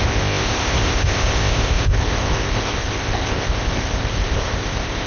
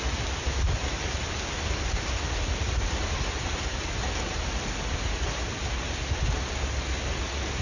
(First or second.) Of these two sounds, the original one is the second